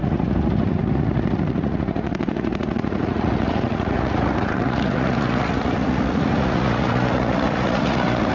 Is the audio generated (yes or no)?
yes